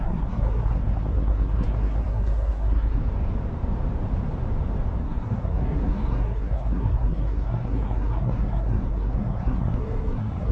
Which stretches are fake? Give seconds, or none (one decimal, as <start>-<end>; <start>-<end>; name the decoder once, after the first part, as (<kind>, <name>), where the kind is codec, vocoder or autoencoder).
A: 0.0-3.0 (codec, SNAC); 5.0-10.5